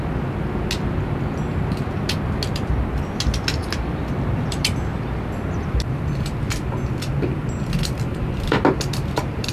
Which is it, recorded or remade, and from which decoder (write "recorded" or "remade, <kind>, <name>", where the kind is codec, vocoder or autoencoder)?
recorded